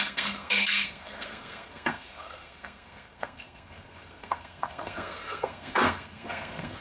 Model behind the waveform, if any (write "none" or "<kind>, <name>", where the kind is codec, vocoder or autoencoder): codec, SNAC